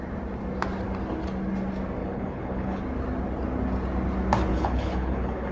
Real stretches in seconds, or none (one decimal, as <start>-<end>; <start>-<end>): 0.0-2.0; 2.8-4.5